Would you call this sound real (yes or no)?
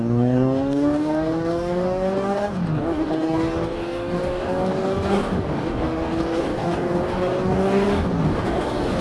no